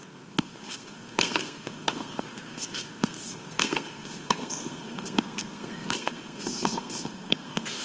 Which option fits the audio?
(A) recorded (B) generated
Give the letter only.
B